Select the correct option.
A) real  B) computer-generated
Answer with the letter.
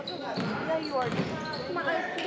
A